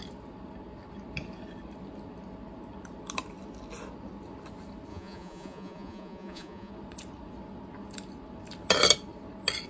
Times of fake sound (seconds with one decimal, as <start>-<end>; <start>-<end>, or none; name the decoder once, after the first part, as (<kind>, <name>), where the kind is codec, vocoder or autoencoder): 4.9-6.7 (vocoder, Vocos)